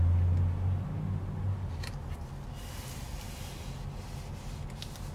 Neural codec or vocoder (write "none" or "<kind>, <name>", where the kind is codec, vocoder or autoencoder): none